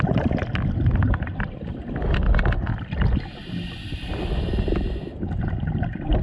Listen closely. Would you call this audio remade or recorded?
recorded